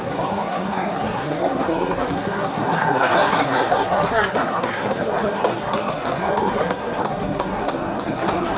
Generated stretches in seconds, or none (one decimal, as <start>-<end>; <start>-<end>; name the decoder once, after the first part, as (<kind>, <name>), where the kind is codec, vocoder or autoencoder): 0.0-8.6 (codec, SNAC)